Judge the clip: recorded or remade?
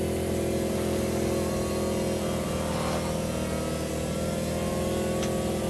recorded